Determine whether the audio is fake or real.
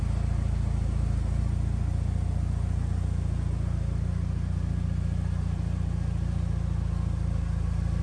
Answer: real